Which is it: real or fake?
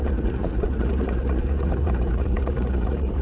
fake